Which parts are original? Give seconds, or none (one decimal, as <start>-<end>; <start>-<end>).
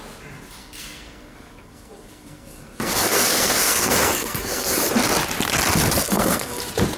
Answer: 0.0-0.6; 4.8-6.0; 6.6-7.0